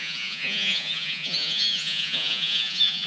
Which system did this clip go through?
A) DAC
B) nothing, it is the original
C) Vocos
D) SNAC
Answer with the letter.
C